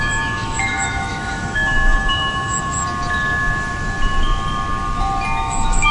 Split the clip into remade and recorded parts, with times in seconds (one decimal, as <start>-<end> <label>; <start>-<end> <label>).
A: 0.0-2.8 remade; 2.8-5.4 recorded; 5.4-5.9 remade